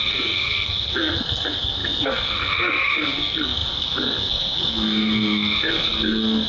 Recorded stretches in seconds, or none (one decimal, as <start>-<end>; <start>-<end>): none